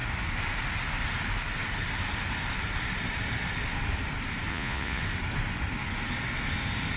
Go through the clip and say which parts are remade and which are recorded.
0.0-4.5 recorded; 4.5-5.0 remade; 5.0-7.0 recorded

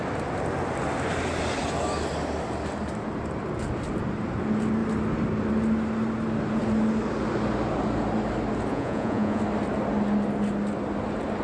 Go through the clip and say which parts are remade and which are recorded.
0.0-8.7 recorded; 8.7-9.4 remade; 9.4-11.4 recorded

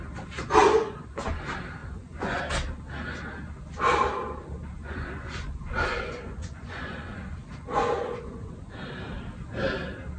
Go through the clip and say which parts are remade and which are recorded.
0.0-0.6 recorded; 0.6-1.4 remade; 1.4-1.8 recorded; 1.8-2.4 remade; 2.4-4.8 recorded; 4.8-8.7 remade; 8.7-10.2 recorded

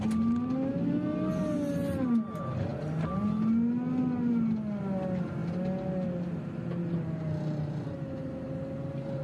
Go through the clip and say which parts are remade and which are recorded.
0.0-9.2 recorded